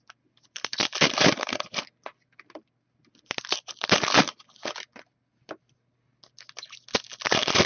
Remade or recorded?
recorded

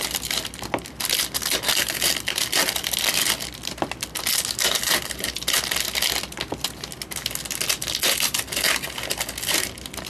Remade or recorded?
recorded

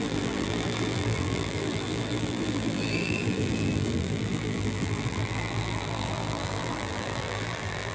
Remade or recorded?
remade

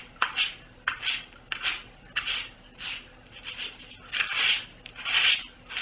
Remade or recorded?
recorded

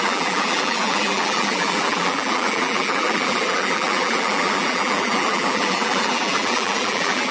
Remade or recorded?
remade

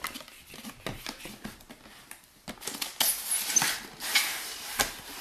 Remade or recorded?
recorded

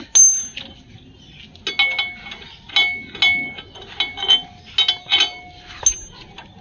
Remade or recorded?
recorded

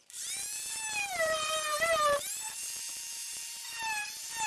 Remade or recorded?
remade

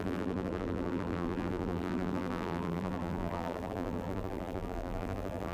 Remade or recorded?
remade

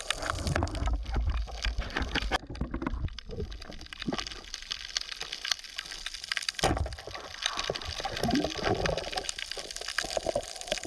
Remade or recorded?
recorded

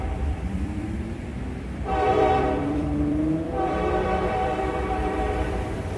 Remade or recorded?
remade